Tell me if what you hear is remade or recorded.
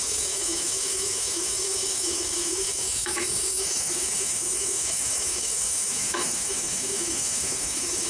remade